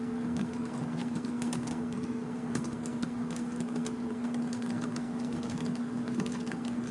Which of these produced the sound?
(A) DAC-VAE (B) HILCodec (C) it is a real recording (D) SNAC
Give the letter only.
D